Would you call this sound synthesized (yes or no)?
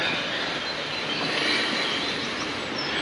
no